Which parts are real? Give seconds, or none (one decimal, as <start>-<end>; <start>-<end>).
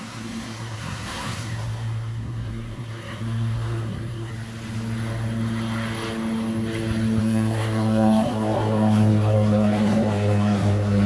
4.3-7.2